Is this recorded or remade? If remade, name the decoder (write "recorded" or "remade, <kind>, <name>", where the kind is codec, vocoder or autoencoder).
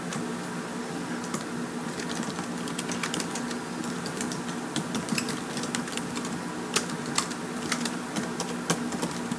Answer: recorded